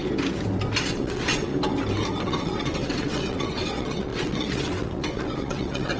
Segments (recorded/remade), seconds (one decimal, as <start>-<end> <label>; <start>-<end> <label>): 0.0-0.8 recorded; 0.8-1.5 remade; 1.5-2.2 recorded; 2.2-6.0 remade